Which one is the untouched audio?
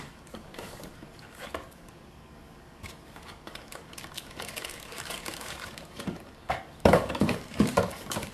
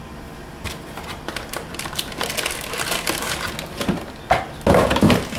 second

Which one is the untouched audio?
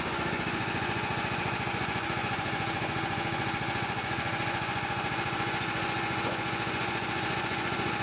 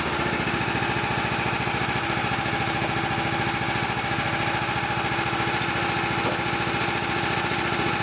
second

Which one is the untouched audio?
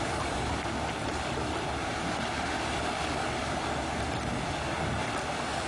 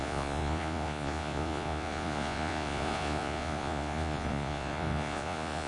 first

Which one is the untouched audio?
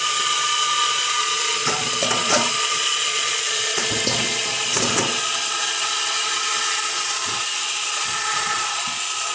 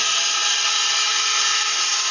second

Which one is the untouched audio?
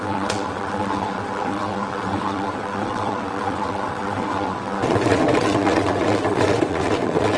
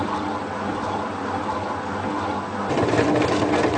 second